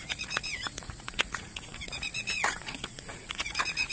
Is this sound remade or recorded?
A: remade